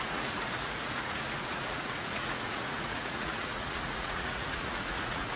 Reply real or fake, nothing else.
fake